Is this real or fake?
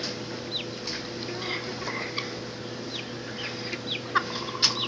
real